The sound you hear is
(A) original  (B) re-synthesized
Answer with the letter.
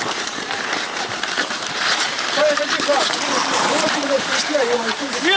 B